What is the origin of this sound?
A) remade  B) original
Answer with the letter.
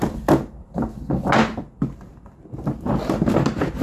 B